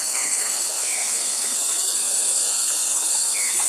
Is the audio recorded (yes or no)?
no